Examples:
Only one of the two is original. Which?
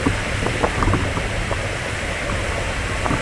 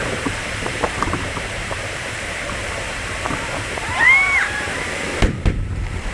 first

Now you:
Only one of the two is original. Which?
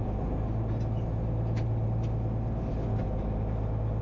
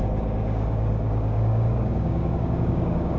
first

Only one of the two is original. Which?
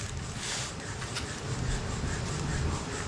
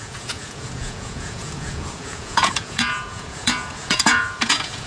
first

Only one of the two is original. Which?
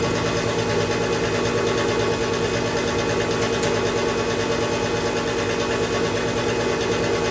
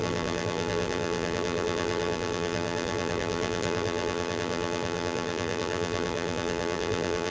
first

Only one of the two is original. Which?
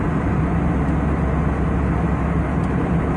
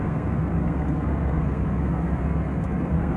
first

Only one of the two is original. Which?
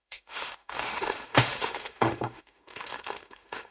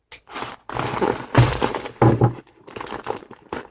second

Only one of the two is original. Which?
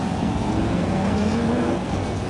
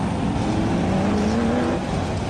second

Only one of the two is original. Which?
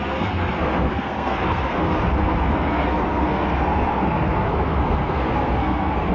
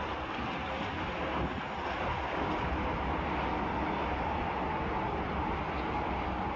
second